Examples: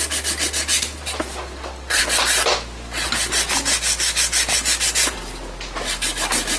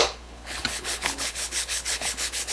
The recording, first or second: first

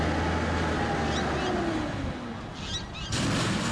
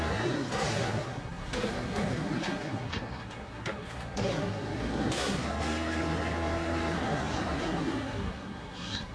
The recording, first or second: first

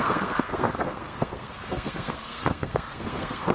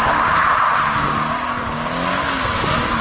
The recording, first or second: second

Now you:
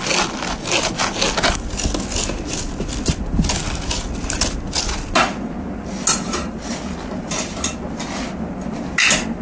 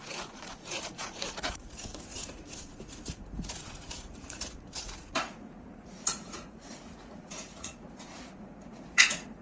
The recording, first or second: first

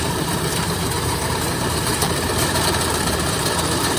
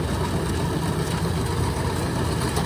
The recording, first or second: second